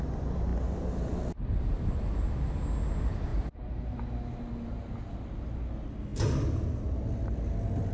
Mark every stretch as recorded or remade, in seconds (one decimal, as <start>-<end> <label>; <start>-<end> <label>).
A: 0.0-3.3 recorded; 3.3-4.0 remade; 4.0-7.9 recorded